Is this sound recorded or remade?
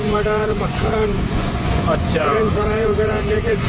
remade